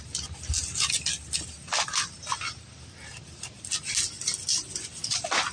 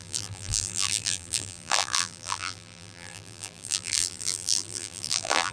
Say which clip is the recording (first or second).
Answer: first